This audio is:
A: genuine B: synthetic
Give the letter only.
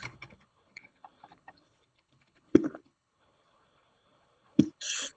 B